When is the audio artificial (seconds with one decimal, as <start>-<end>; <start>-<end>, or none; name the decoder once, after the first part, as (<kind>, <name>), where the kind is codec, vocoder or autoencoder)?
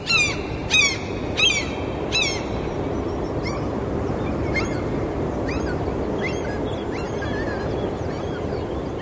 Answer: none